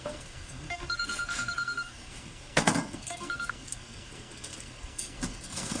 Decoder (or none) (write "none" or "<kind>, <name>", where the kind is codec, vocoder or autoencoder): codec, SNAC